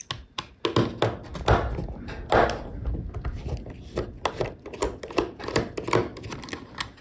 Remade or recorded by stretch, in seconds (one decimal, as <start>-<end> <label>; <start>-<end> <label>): 0.0-7.0 recorded